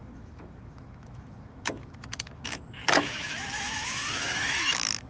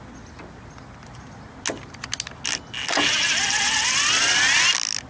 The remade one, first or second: first